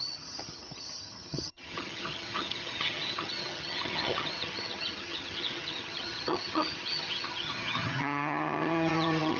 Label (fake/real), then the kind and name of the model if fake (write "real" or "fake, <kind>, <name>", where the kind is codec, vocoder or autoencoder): fake, vocoder, HiFi-GAN